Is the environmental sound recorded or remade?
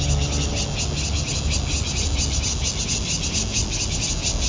recorded